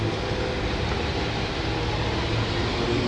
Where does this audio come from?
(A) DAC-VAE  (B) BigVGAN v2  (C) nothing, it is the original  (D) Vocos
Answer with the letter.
C